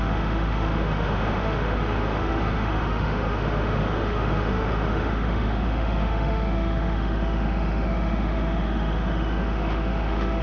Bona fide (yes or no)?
no